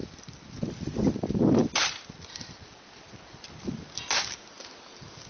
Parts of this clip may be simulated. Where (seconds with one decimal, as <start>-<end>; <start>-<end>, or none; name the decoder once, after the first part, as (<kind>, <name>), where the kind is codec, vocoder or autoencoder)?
none